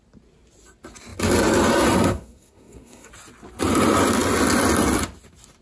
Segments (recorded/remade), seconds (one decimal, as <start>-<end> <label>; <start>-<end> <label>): 0.0-2.1 recorded; 2.1-3.1 remade; 3.1-5.6 recorded